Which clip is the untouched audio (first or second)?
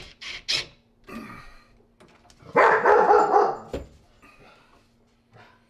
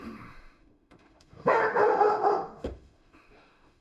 first